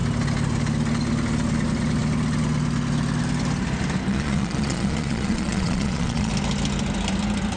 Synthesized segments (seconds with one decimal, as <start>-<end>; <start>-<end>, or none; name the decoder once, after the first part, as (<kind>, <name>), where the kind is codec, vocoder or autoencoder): 4.1-6.3 (vocoder, Vocos)